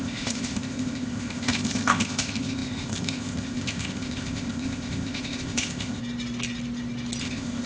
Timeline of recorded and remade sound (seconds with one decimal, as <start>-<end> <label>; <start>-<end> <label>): 0.0-6.0 remade; 6.0-7.2 recorded; 7.2-7.7 remade

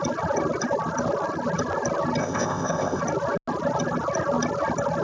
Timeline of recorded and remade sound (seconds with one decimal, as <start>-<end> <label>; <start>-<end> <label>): 0.0-2.2 recorded; 2.2-3.0 remade; 3.0-5.0 recorded

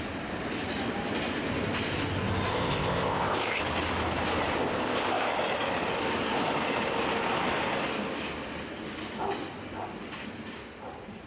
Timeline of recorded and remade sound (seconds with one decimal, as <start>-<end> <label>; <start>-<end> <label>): 0.0-2.5 recorded; 2.5-3.6 remade; 3.6-4.6 recorded; 4.6-5.3 remade; 5.3-11.3 recorded

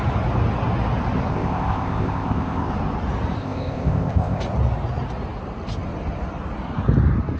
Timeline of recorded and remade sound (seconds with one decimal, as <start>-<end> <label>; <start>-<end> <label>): 0.0-1.3 recorded; 1.3-2.7 remade; 2.7-3.4 recorded; 3.4-4.4 remade; 4.4-7.4 recorded

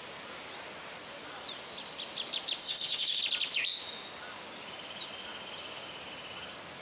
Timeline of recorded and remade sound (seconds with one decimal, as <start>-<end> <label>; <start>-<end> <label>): 0.0-2.6 recorded; 2.6-3.2 remade; 3.2-6.8 recorded

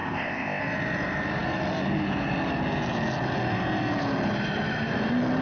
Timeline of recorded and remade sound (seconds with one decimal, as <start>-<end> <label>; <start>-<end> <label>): 0.0-0.6 remade; 0.6-5.4 recorded

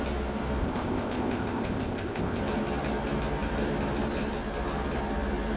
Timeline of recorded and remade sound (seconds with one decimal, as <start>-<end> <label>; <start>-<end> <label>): 0.0-0.6 recorded; 0.6-2.4 remade; 2.4-5.6 recorded

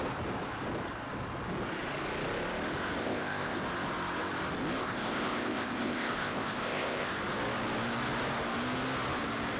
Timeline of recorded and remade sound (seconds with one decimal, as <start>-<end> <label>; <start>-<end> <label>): 0.0-3.0 recorded; 3.0-3.6 remade; 3.6-4.8 recorded; 4.8-7.1 remade; 7.1-9.6 recorded